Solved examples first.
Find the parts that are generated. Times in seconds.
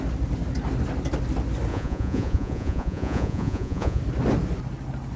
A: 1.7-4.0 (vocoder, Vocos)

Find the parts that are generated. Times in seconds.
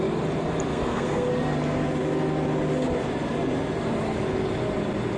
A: 0.7-1.3 (codec, SNAC)